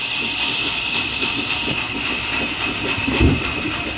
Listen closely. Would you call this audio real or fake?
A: fake